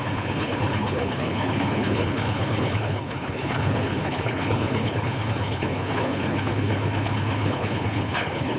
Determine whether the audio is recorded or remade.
remade